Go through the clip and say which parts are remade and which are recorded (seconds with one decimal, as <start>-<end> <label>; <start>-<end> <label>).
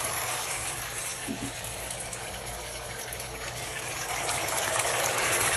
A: 0.0-5.6 remade